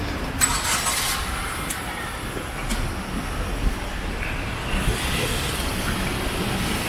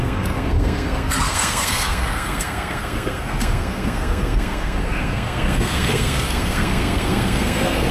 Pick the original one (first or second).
first